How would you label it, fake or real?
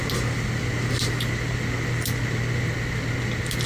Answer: real